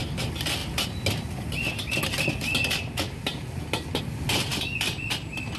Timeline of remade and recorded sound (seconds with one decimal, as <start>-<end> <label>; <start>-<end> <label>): 0.0-5.6 recorded